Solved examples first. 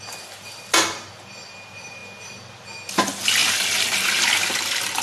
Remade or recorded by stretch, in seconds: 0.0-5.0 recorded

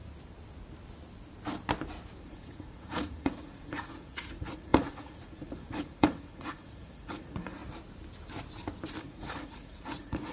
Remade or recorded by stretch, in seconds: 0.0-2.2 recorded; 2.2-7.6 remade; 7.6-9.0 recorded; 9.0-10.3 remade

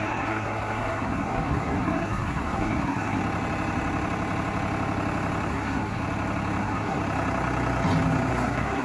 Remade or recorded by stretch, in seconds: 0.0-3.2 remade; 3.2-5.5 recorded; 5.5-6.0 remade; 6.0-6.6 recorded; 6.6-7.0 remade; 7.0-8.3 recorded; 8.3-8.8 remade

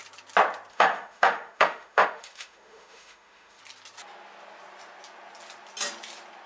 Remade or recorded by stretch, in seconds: 0.0-0.7 recorded; 0.7-3.6 remade; 3.6-6.5 recorded

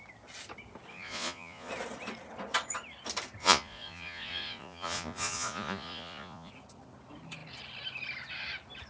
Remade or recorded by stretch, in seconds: 0.0-0.9 recorded; 0.9-1.7 remade; 1.7-3.4 recorded; 3.4-6.5 remade; 6.5-8.9 recorded